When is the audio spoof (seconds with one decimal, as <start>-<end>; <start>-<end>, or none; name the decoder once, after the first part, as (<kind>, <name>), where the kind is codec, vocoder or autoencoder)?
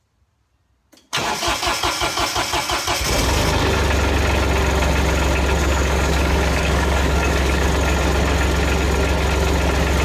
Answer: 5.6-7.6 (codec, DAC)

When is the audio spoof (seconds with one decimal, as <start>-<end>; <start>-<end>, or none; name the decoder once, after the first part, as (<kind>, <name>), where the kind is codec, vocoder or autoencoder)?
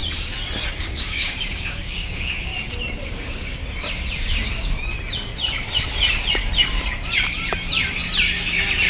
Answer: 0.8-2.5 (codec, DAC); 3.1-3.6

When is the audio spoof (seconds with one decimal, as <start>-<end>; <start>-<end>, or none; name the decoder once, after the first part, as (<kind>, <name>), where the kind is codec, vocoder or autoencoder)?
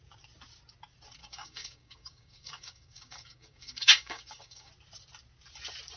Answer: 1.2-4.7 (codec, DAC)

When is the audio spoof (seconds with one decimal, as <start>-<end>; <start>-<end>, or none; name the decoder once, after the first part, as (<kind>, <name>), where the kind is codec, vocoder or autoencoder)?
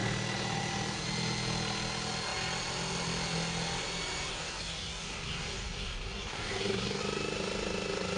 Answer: 4.3-7.0 (codec, DAC)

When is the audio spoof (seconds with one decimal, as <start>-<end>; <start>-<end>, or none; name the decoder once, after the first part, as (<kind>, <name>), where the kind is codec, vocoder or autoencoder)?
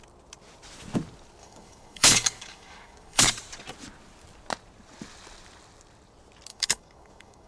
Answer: 1.4-3.2 (codec, DAC); 6.5-7.5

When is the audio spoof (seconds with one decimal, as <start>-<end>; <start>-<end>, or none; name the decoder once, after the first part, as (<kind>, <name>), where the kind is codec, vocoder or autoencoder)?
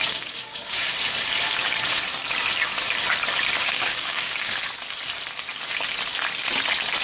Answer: 0.0-0.9 (codec, DAC); 3.6-4.6